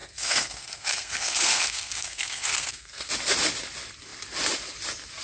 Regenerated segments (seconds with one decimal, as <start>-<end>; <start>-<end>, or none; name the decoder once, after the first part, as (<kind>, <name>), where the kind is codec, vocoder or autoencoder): 0.0-3.1 (codec, SNAC)